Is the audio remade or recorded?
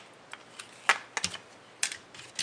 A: recorded